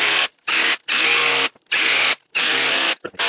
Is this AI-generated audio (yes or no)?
no